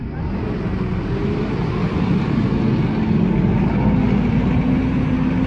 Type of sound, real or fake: real